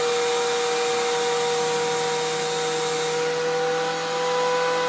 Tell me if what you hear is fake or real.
real